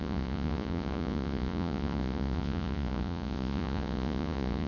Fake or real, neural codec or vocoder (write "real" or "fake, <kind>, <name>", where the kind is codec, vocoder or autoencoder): fake, vocoder, Vocos